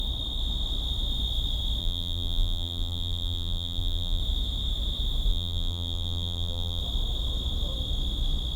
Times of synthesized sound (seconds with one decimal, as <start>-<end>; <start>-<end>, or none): 1.8-4.2; 5.3-6.8

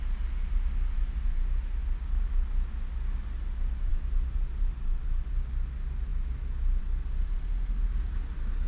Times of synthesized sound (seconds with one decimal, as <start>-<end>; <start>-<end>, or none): 3.9-5.3

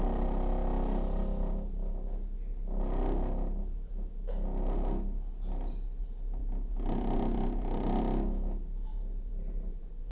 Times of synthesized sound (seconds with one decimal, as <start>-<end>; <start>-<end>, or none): 6.4-8.0; 8.9-10.1

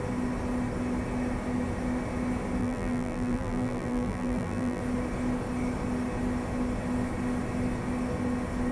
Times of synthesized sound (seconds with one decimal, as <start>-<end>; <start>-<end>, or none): 2.6-4.8

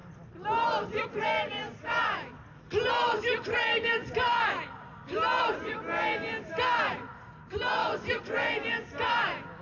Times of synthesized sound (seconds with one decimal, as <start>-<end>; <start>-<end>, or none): 4.3-5.5; 7.8-8.5

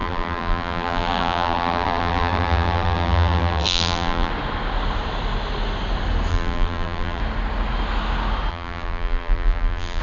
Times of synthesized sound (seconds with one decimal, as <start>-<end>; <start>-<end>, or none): 0.0-4.3; 6.3-7.2; 8.5-10.0

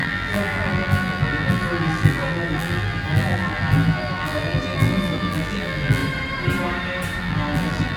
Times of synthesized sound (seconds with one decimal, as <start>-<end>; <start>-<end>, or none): 0.0-6.0; 7.2-8.0

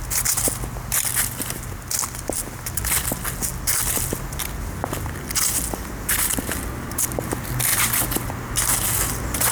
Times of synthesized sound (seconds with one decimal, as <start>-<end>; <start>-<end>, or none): none